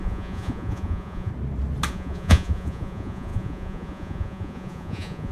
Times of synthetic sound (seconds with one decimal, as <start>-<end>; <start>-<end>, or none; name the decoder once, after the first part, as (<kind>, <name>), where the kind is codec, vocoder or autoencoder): 0.0-1.3 (vocoder, Vocos); 1.9-5.3